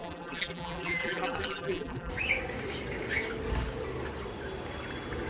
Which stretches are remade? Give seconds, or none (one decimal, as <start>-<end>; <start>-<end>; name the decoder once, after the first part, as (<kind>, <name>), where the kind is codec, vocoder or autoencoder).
0.0-2.1 (vocoder, BigVGAN v2)